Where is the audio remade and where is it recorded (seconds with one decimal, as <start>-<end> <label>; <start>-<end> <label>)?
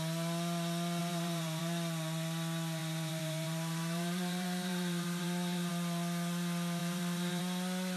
0.0-1.0 recorded; 1.0-1.6 remade; 1.6-2.8 recorded; 2.8-5.7 remade; 5.7-6.8 recorded; 6.8-7.4 remade; 7.4-8.0 recorded